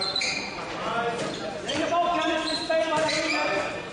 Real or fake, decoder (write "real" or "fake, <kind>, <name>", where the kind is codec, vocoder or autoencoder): fake, vocoder, BigVGAN v2